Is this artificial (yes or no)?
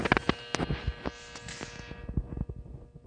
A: no